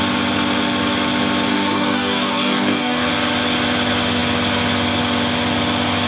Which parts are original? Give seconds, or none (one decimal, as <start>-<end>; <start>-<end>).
0.0-1.5; 3.1-6.1